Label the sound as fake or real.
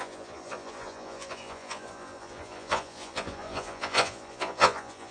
fake